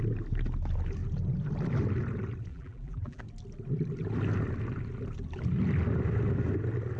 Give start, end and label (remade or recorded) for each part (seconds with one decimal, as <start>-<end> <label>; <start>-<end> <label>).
0.0-2.5 recorded; 2.5-3.2 remade; 3.2-7.0 recorded